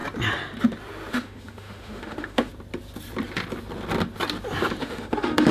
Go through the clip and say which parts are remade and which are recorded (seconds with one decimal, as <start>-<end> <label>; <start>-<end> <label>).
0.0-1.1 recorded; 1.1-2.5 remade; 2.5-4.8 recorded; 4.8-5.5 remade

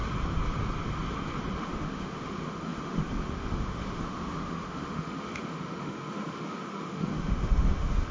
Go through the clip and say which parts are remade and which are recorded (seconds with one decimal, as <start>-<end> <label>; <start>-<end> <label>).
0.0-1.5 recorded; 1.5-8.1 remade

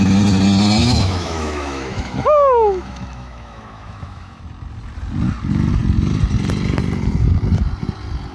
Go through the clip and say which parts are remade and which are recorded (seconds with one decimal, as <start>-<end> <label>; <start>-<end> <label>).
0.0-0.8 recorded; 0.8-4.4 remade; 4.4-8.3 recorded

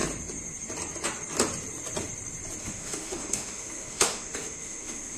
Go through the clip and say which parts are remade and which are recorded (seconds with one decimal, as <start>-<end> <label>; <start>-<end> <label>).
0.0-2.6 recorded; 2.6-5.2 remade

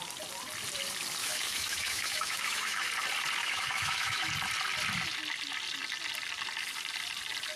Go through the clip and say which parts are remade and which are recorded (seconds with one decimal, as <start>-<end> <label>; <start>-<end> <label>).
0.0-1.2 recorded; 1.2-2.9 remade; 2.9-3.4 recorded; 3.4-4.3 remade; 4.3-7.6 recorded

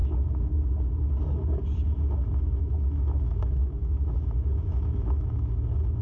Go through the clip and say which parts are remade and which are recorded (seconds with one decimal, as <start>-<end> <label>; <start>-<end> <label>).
0.0-2.6 recorded; 2.6-6.0 remade